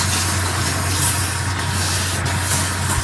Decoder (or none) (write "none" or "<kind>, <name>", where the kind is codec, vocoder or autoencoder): none